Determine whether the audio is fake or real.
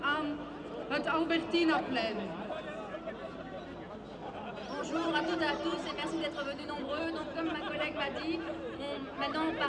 real